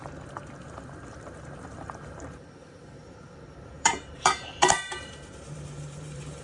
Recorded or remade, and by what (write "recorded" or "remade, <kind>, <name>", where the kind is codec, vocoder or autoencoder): remade, vocoder, BigVGAN v2